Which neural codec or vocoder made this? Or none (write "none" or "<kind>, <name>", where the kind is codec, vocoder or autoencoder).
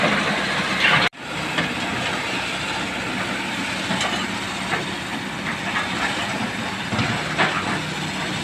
none